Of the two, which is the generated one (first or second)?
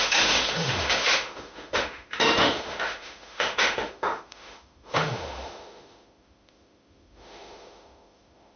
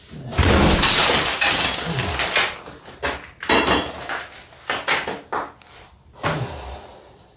first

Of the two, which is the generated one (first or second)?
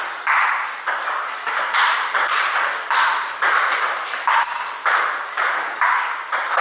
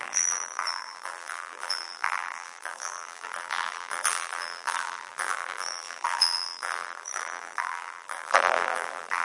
second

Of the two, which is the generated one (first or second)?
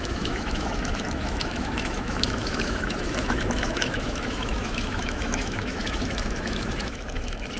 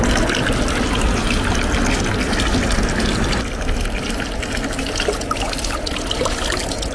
first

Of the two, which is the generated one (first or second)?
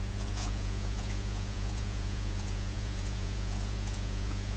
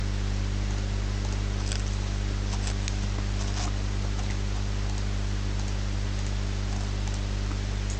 first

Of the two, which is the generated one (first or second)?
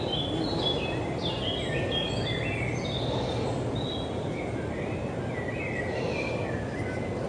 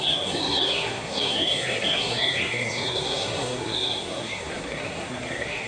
second